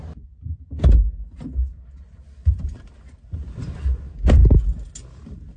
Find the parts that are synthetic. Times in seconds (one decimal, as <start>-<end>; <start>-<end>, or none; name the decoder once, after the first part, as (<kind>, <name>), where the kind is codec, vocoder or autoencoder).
none